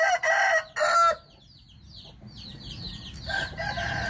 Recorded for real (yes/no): yes